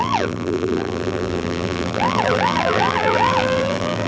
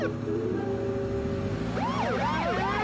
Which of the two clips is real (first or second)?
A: second